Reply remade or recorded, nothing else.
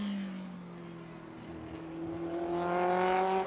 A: recorded